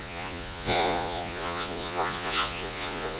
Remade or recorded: remade